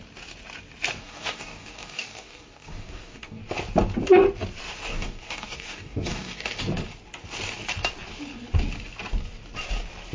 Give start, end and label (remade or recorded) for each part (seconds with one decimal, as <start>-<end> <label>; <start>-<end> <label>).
0.0-1.0 recorded; 1.0-3.4 remade; 3.4-4.9 recorded; 4.9-6.6 remade; 6.6-10.1 recorded